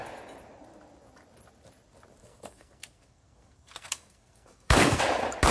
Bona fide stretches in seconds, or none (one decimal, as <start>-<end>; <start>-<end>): 0.0-2.2; 5.0-5.5